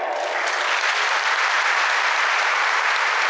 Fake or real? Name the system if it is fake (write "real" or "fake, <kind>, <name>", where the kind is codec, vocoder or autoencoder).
real